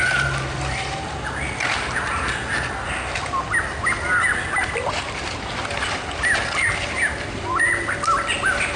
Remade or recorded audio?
recorded